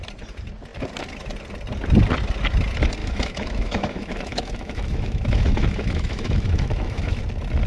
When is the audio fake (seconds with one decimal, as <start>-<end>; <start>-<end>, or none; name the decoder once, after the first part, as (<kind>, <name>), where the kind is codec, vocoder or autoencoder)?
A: 3.0-7.2 (autoencoder, DAC-VAE)